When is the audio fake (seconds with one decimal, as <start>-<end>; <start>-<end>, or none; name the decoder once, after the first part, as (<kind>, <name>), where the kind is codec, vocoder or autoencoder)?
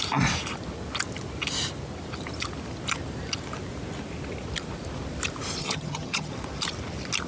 5.6-6.3 (vocoder, HiFi-GAN)